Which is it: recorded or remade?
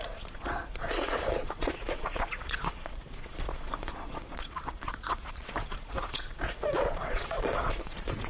remade